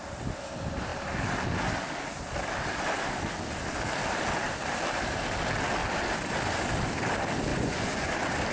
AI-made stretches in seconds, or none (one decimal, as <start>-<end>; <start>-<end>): 7.5-8.1